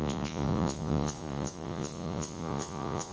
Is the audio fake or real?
fake